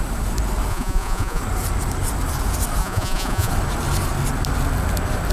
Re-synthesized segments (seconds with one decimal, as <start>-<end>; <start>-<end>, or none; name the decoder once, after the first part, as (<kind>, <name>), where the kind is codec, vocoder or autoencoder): 0.7-1.4 (vocoder, Vocos); 2.8-3.5